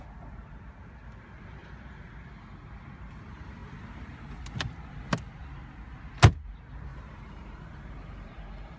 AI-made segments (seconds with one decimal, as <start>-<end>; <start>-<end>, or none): 6.9-8.3